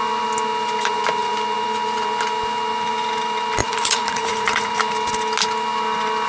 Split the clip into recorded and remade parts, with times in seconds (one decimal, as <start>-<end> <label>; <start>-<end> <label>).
0.0-3.6 recorded; 3.6-4.7 remade; 4.7-6.3 recorded

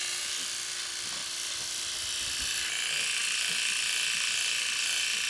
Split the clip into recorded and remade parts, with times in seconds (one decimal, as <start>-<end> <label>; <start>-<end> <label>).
0.0-5.3 recorded

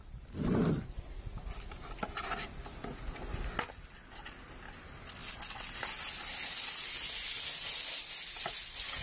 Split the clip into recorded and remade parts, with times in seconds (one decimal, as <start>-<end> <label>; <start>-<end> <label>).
0.0-9.0 recorded

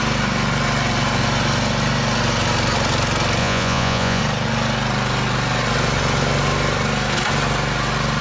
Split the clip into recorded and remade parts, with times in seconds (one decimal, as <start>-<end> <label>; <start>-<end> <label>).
0.0-3.4 recorded; 3.4-4.2 remade; 4.2-8.2 recorded

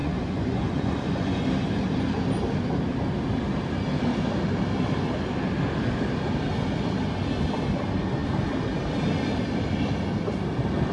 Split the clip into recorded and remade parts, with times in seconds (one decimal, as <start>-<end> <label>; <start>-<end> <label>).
0.0-1.4 remade; 1.4-10.9 recorded

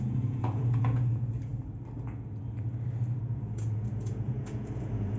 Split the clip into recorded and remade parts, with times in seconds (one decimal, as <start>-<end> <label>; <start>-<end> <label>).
0.0-1.5 remade; 1.5-3.2 recorded; 3.2-5.2 remade